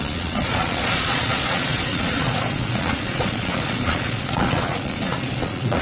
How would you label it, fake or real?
fake